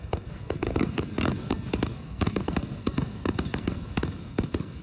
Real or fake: fake